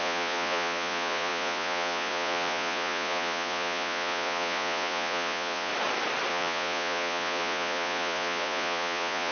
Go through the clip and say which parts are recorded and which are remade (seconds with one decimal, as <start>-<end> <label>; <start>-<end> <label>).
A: 0.0-5.7 remade; 5.7-6.3 recorded; 6.3-9.3 remade